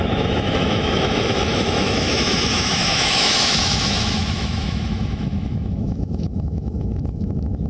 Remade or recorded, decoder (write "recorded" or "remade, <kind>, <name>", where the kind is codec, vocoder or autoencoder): remade, autoencoder, DAC-VAE